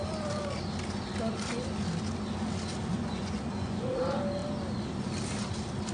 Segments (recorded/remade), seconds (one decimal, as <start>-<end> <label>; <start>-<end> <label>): 0.0-2.9 recorded; 2.9-3.9 remade; 3.9-5.9 recorded

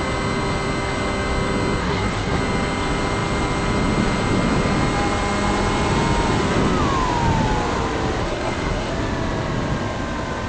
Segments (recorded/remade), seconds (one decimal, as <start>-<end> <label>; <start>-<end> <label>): 0.0-1.8 recorded; 1.8-2.4 remade; 2.4-8.2 recorded; 8.2-8.9 remade; 8.9-10.5 recorded

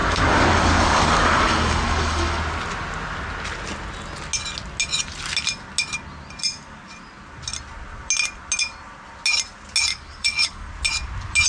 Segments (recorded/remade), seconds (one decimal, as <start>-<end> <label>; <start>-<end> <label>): 0.0-2.4 remade; 2.4-9.9 recorded; 9.9-10.7 remade; 10.7-11.5 recorded

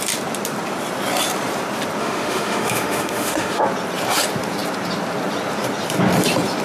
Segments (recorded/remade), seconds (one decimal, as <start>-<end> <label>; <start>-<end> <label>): 0.0-2.0 recorded; 2.0-3.6 remade; 3.6-6.6 recorded

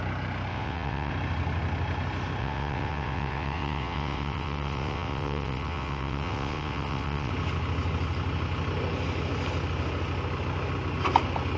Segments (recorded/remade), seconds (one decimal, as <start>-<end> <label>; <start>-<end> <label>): 0.0-0.5 recorded; 0.5-1.1 remade; 1.1-2.4 recorded; 2.4-7.3 remade; 7.3-11.6 recorded

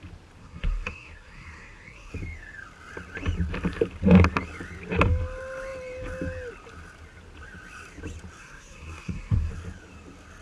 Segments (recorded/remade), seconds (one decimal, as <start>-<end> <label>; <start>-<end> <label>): 0.0-0.4 recorded; 0.4-2.1 remade; 2.1-8.4 recorded; 8.4-9.5 remade; 9.5-10.4 recorded